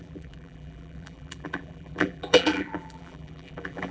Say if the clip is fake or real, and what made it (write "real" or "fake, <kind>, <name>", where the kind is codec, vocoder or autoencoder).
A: fake, vocoder, BigVGAN v2